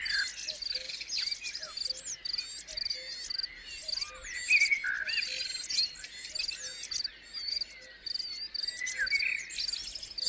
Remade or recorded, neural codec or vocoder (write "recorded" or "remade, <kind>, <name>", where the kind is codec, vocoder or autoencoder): recorded